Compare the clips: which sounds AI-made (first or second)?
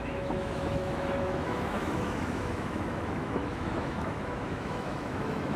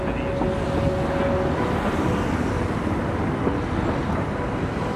first